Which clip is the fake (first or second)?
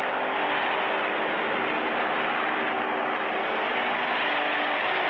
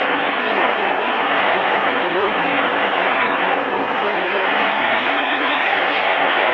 second